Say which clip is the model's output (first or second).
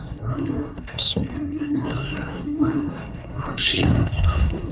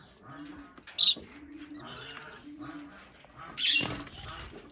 first